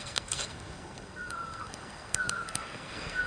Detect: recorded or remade remade